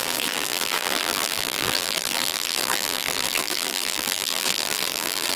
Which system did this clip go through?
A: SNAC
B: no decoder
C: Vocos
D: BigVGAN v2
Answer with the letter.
D